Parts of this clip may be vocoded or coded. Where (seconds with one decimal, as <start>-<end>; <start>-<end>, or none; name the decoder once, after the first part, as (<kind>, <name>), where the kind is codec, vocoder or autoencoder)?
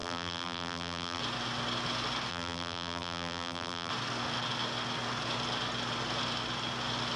0.0-1.2 (vocoder, BigVGAN v2); 2.3-3.9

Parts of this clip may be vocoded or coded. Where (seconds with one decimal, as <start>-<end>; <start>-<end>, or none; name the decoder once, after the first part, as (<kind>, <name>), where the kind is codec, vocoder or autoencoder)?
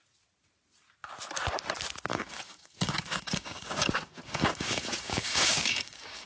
2.1-6.3 (codec, DAC)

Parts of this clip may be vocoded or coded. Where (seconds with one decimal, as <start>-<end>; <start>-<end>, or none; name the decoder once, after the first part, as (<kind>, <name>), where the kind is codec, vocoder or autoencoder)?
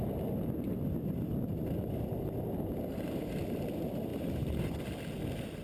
none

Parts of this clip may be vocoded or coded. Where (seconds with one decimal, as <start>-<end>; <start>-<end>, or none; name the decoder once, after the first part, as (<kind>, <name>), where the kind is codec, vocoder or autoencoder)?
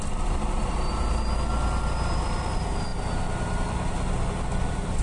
none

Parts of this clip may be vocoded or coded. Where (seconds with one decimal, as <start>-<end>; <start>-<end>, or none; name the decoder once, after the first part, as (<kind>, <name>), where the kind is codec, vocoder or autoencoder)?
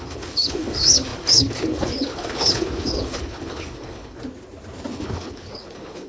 0.0-4.2 (codec, HILCodec); 4.9-6.1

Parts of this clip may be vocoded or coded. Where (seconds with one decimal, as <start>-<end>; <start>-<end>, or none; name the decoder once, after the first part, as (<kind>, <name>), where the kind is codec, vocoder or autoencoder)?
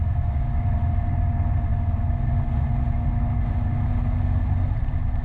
none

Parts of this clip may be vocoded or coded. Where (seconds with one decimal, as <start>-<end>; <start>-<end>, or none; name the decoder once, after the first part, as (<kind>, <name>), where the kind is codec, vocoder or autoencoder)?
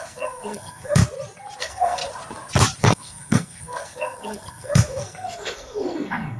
0.0-1.0 (codec, SNAC); 1.6-2.0; 2.8-6.4